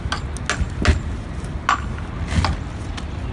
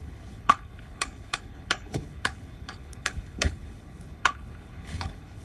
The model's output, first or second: second